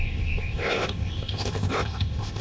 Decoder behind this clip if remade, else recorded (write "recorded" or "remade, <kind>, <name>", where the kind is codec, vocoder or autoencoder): remade, codec, ZipCodec